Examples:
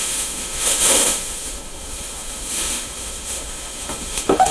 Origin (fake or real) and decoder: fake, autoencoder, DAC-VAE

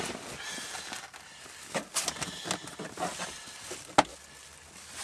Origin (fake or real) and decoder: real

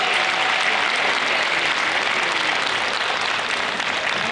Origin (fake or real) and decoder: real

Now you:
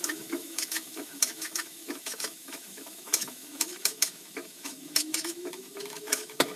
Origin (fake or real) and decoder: fake, autoencoder, DAC-VAE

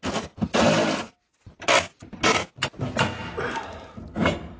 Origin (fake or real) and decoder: real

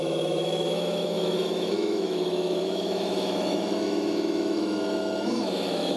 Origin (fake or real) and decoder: fake, autoencoder, DAC-VAE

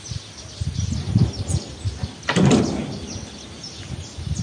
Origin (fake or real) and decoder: real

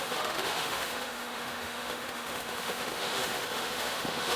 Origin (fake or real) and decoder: fake, autoencoder, DAC-VAE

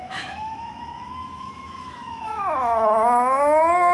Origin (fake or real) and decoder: fake, autoencoder, DAC-VAE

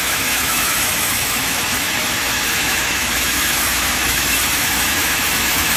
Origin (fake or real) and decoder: fake, autoencoder, DAC-VAE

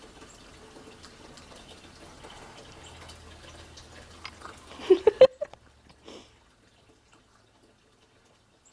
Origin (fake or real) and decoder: real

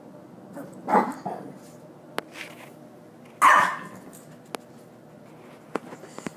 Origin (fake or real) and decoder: real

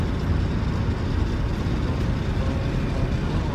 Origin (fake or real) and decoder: real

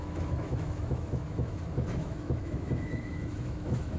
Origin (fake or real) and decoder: fake, autoencoder, DAC-VAE